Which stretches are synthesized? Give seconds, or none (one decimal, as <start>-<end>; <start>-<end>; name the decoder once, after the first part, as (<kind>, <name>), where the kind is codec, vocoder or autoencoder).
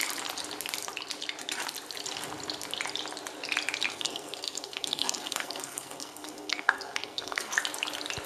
3.9-7.5 (codec, SNAC)